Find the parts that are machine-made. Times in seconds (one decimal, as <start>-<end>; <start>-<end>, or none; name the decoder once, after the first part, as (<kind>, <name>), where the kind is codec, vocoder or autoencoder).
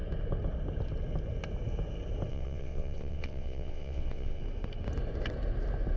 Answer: 2.3-4.4 (vocoder, WaveNeXt)